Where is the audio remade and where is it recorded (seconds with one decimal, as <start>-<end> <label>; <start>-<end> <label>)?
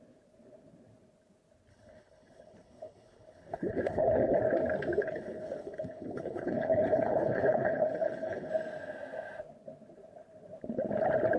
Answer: 0.0-1.7 recorded; 1.7-4.4 remade; 4.4-5.0 recorded; 5.0-8.5 remade; 8.5-11.4 recorded